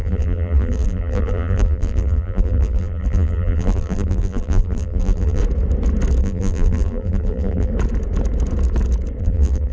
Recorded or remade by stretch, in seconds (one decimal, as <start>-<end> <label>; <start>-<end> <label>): 0.0-5.4 remade; 5.4-6.2 recorded; 6.2-7.7 remade; 7.7-9.2 recorded; 9.2-9.7 remade